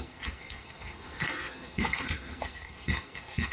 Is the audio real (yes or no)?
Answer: no